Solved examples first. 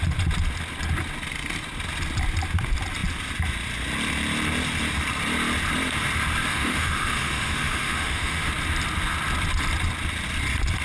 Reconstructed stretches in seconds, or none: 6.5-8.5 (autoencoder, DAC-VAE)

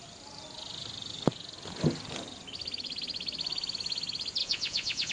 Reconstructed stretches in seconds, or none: 4.4-5.1 (vocoder, Vocos)